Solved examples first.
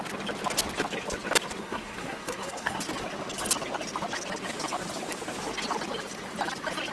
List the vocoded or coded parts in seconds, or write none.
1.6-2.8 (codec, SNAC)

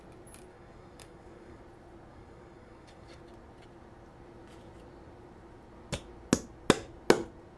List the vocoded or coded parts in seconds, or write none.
0.5-1.6 (codec, DAC); 2.1-3.2

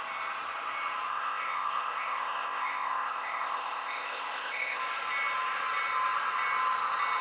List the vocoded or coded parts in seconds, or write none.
1.1-4.8 (codec, ZipCodec)

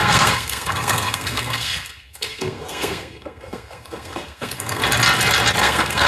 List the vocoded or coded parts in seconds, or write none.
0.0-4.8 (codec, SNAC); 5.6-6.1

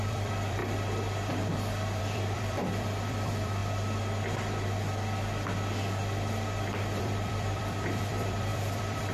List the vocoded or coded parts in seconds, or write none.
0.0-0.6 (vocoder, BigVGAN v2); 2.0-3.6; 7.0-9.1

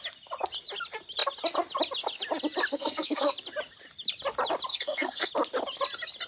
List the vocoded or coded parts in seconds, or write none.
2.7-3.3 (codec, SNAC); 4.7-5.3